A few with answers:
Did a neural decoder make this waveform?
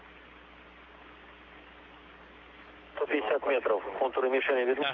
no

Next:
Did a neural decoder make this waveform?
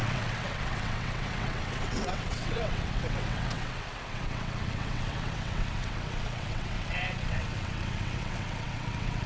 yes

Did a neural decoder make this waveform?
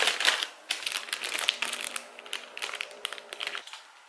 no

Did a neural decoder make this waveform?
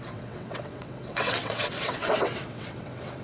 yes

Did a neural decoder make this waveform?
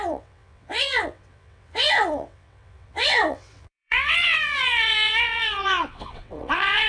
yes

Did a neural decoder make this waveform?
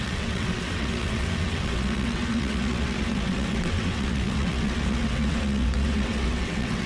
yes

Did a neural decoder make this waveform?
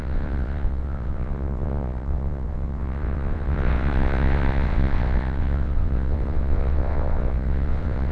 yes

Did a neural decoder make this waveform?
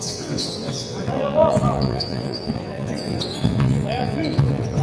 yes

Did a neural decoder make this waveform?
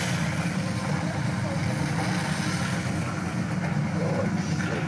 no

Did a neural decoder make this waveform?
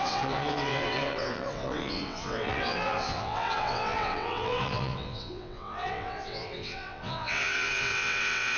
yes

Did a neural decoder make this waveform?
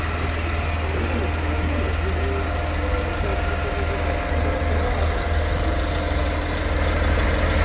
no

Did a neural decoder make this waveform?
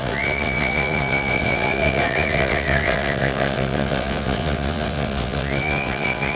yes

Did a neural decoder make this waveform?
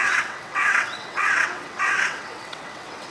yes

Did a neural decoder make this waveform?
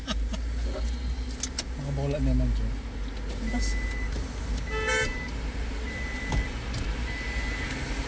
no